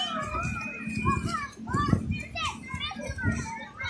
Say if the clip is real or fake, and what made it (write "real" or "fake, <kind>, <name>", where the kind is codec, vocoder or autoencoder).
real